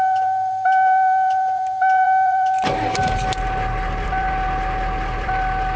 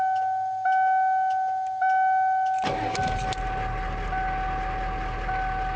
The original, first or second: second